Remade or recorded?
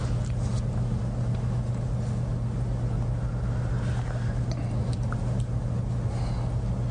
recorded